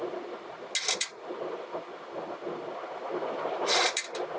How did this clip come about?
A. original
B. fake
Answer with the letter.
A